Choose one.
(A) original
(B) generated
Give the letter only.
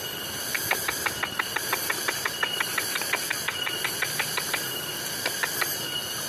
A